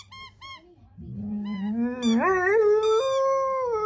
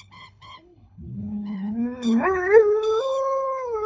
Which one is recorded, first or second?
first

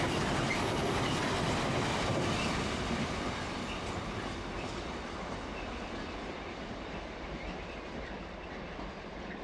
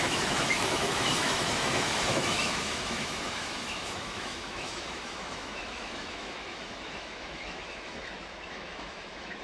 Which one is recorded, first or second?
first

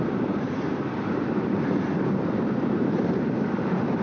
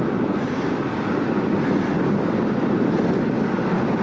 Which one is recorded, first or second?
second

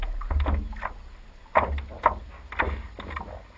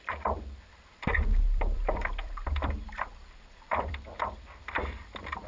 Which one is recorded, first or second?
first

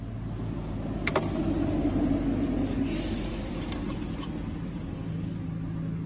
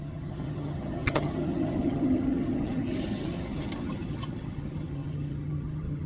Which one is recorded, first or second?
first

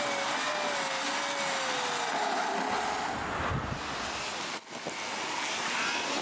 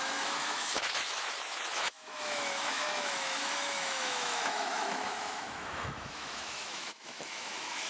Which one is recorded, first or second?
first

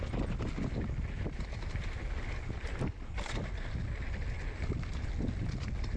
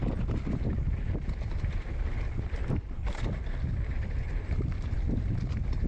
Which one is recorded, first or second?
first